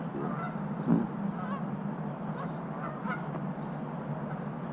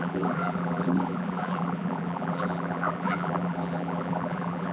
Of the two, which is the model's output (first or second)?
second